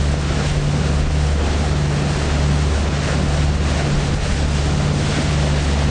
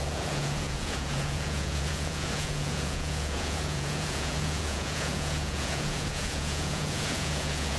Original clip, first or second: first